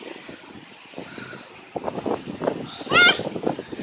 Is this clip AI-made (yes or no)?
no